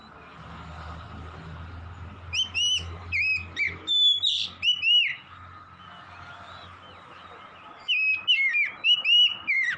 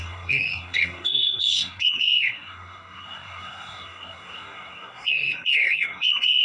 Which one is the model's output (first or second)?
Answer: second